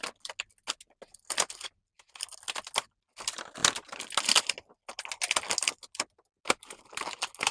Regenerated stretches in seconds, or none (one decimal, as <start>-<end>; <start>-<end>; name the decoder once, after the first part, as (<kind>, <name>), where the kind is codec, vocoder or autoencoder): none